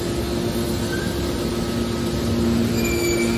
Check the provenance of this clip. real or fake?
real